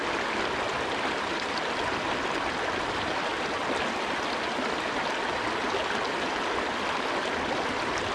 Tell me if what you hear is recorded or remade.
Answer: recorded